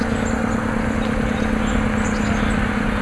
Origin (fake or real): real